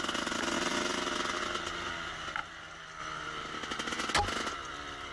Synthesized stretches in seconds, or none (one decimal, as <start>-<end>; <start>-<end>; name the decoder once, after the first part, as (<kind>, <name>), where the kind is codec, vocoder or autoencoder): none